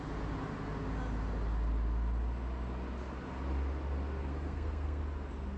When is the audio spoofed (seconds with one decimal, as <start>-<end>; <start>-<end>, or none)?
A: 4.3-5.0